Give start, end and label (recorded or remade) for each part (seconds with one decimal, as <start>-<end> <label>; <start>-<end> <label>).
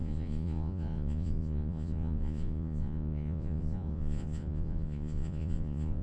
0.0-6.0 remade